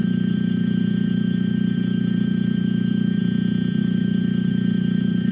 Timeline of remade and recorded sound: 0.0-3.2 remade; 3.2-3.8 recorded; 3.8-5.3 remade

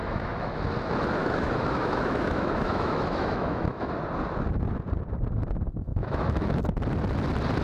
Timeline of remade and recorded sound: 0.0-0.6 remade; 0.6-1.2 recorded; 1.2-3.9 remade; 3.9-5.9 recorded; 5.9-6.6 remade; 6.6-7.6 recorded